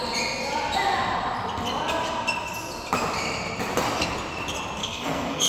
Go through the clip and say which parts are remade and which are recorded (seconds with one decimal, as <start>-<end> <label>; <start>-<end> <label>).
0.0-4.8 recorded; 4.8-5.5 remade